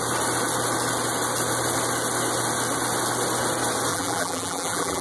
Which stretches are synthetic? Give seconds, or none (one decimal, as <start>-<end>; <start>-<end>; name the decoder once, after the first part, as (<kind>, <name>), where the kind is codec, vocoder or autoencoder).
3.9-5.0 (vocoder, BigVGAN v2)